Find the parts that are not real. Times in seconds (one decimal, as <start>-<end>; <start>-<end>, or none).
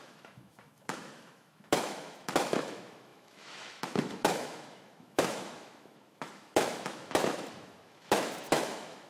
0.0-9.1